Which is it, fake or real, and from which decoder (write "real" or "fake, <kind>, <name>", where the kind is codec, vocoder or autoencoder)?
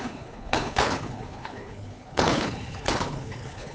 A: fake, codec, HILCodec